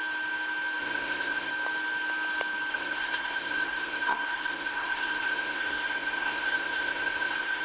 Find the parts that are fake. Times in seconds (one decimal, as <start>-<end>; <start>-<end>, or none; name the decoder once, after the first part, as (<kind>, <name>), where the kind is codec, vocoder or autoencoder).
0.8-1.5 (codec, SNAC); 2.7-7.6